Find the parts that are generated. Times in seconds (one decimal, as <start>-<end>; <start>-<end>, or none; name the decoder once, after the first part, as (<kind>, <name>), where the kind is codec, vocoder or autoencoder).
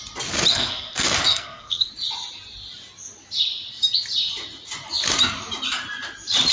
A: 0.5-1.9 (codec, SNAC)